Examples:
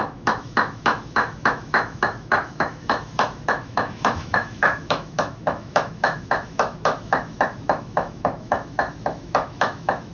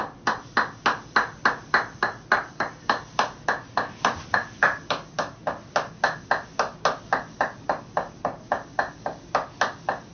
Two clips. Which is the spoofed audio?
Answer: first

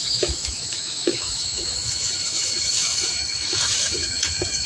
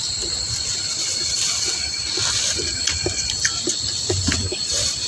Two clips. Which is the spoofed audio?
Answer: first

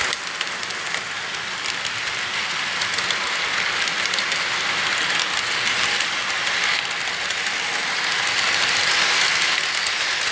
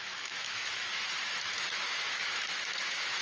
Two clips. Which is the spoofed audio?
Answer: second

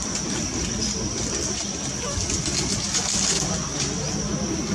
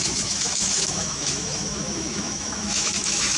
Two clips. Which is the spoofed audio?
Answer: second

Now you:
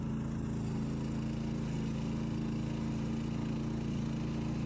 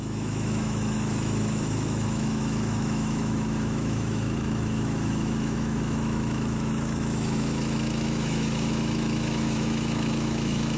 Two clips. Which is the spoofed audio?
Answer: second